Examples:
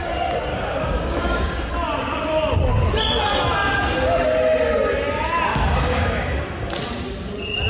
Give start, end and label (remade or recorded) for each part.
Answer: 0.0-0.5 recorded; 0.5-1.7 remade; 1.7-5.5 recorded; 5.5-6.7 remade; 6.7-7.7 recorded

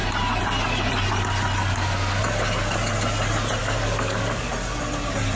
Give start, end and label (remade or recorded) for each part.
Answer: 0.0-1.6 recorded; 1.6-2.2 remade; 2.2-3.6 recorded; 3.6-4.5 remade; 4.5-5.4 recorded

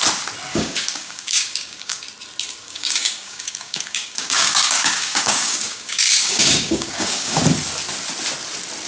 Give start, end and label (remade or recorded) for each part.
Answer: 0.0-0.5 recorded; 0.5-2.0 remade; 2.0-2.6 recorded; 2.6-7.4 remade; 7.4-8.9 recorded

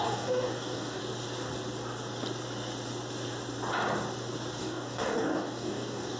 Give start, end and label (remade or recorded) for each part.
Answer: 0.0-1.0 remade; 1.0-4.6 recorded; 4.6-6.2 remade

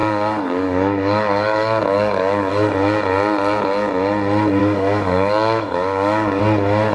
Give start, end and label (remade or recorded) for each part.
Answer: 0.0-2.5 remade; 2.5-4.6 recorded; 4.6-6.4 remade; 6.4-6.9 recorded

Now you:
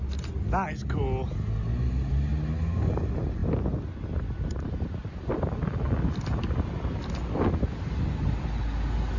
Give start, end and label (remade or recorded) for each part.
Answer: 0.0-9.2 recorded

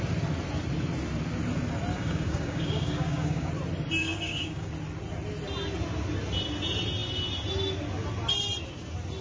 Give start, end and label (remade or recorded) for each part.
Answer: 0.0-1.9 recorded; 1.9-3.5 remade; 3.5-4.0 recorded; 4.0-4.7 remade; 4.7-9.2 recorded